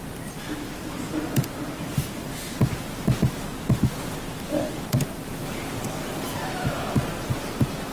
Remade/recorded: recorded